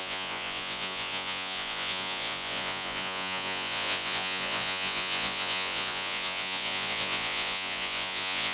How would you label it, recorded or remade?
remade